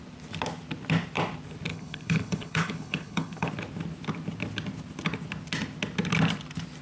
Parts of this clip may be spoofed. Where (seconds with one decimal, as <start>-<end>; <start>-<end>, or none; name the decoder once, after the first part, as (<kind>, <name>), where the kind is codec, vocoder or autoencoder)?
1.7-3.5 (codec, HILCodec)